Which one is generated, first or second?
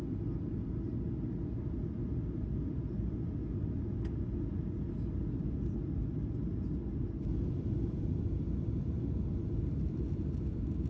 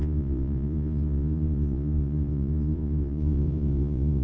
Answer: second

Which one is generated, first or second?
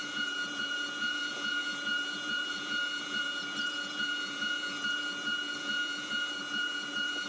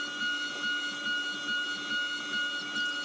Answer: first